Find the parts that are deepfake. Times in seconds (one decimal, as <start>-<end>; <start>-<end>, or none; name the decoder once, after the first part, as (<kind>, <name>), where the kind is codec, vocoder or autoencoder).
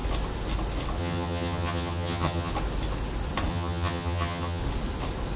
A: 1.0-2.5 (vocoder, HiFi-GAN); 3.5-4.6